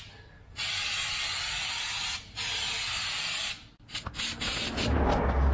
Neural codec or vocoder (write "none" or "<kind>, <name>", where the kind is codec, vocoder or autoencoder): none